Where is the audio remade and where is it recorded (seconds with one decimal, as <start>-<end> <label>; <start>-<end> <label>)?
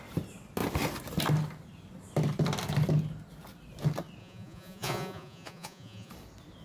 0.0-4.2 recorded; 4.2-6.1 remade; 6.1-6.6 recorded